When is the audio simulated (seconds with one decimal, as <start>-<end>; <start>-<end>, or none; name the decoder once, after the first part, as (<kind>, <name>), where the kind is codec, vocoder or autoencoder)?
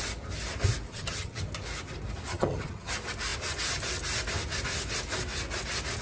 0.9-1.4 (vocoder, HiFi-GAN); 2.3-2.9